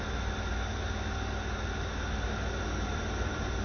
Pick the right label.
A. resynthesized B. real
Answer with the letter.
B